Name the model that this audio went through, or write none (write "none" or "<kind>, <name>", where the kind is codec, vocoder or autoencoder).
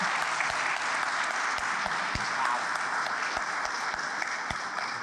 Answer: none